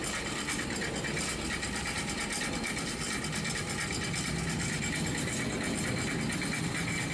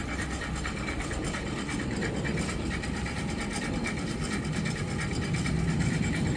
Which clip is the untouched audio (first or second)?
first